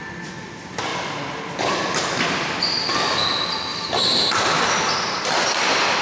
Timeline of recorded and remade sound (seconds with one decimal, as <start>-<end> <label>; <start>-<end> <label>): 0.0-6.0 recorded